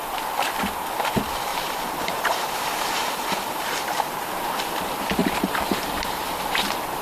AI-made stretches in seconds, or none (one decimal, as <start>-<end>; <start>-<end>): 1.5-4.1; 5.2-6.6